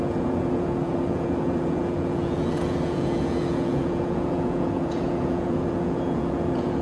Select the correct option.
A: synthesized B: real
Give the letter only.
A